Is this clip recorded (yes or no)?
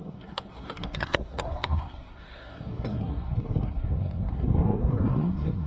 no